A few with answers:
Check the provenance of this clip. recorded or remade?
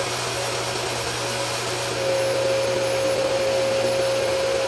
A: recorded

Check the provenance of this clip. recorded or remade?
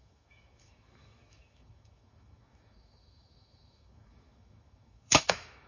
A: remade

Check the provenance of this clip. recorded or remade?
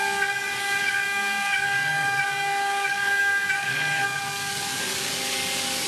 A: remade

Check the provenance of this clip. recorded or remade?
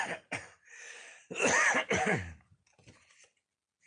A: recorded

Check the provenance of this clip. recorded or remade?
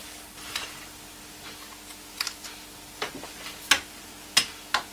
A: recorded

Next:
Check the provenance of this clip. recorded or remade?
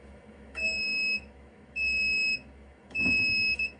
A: remade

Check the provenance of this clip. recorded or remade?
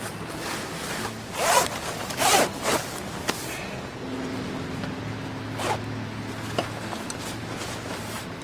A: recorded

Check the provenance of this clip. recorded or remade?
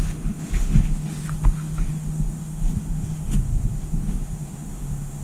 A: remade